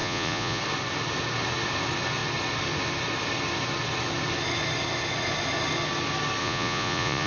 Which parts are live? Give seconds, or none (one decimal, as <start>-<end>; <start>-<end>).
0.6-6.4